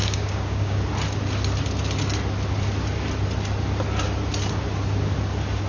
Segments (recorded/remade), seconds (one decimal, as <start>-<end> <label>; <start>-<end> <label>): 0.0-0.8 remade; 0.8-5.7 recorded